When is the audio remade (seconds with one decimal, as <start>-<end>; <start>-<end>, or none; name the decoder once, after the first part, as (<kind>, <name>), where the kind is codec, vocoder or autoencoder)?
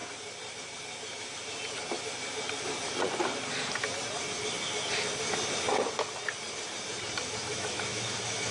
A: 7.5-8.5 (autoencoder, DAC-VAE)